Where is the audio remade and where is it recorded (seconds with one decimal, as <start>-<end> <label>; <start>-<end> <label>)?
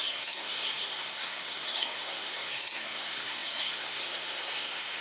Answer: 0.0-5.0 remade